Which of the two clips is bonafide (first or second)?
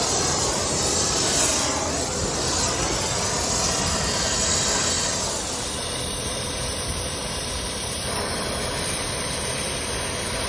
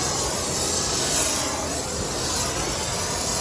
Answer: second